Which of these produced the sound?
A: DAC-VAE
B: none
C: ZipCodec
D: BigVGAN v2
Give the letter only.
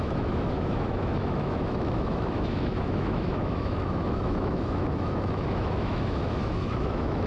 A